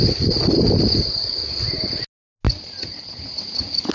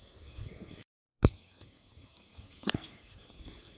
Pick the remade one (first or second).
second